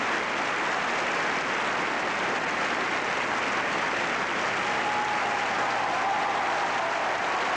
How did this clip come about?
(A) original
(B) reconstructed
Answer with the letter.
A